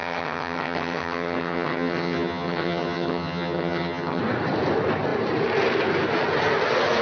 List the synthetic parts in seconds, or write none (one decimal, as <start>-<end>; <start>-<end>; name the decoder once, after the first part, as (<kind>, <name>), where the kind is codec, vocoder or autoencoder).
0.0-4.2 (vocoder, HiFi-GAN)